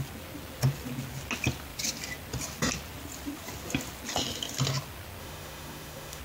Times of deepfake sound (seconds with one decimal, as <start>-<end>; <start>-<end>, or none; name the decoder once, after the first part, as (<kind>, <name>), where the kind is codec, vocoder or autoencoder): 5.2-6.2 (autoencoder, DAC-VAE)